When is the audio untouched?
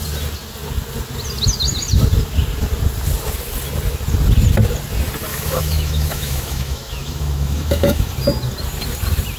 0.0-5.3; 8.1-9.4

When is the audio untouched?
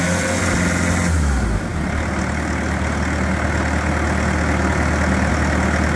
0.0-6.0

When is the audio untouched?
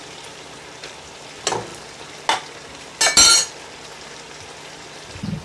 0.0-5.4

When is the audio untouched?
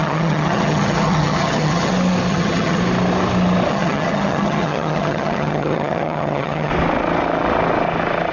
1.9-2.3; 2.8-3.7; 6.7-8.3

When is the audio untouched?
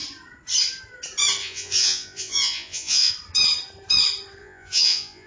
0.0-1.4; 3.1-4.4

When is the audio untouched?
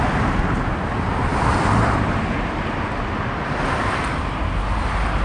0.0-5.2